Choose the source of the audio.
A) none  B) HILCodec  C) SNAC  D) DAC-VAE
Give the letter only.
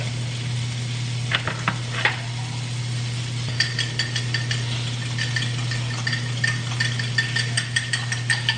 A